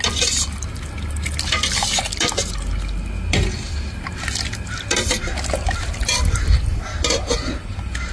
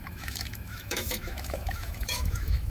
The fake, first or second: second